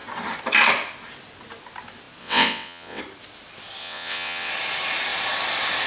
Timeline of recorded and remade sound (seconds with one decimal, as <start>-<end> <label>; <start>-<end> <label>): 0.0-2.2 recorded; 2.2-3.0 remade; 3.0-3.8 recorded; 3.8-4.5 remade; 4.5-5.9 recorded